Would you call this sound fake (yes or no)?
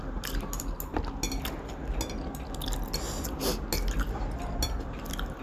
no